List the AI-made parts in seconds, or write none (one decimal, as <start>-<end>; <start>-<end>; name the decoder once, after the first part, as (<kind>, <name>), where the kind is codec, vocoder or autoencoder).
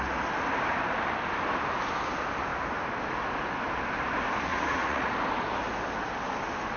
4.5-5.1 (vocoder, Vocos)